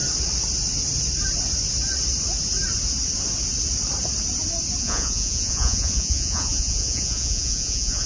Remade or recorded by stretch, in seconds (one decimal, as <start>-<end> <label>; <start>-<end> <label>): 0.0-4.8 recorded; 4.8-8.1 remade